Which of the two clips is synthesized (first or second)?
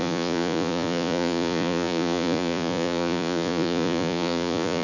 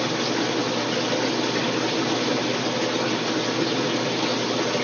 first